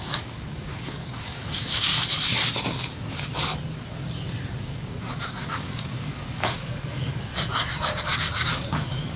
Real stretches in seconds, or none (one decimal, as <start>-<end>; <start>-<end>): 1.9-4.6; 7.3-8.0